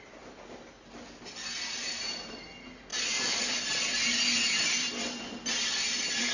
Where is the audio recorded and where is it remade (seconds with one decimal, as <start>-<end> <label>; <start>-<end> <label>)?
0.0-6.3 recorded